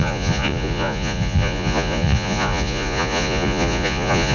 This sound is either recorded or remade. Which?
remade